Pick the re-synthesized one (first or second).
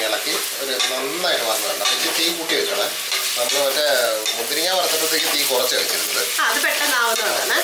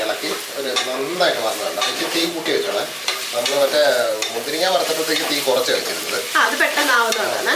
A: second